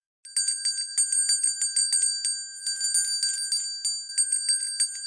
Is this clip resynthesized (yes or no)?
no